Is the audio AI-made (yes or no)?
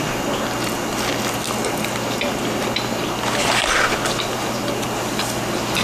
no